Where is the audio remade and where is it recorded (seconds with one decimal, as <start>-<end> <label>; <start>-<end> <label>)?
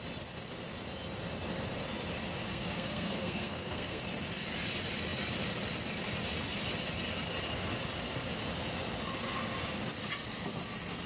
0.0-2.5 recorded; 2.5-4.0 remade; 4.0-11.1 recorded